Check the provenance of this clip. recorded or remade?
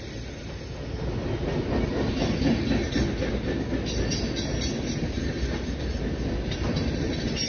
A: recorded